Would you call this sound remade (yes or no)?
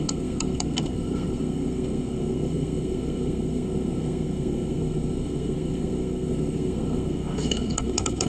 yes